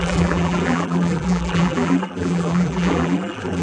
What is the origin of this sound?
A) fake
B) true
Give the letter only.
A